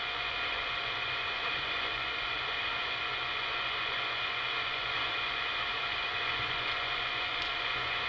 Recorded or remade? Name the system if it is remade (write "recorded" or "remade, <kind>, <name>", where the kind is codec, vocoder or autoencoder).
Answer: remade, vocoder, Vocos